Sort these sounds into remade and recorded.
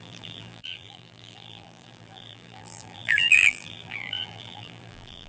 remade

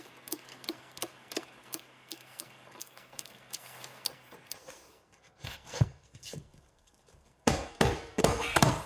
remade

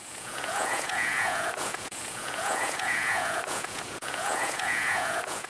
remade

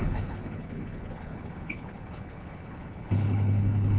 remade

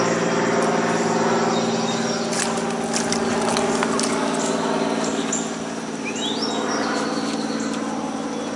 recorded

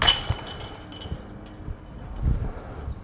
recorded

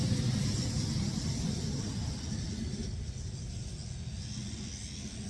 recorded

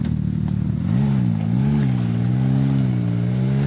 recorded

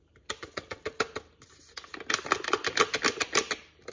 recorded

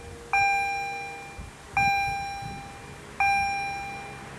recorded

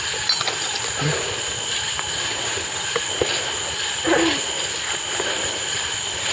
recorded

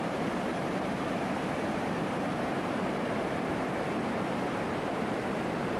remade